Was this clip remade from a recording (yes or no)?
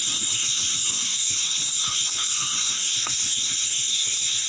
yes